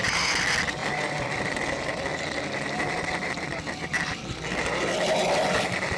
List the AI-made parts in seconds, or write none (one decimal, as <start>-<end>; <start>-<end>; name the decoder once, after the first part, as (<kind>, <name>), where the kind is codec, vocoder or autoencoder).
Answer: none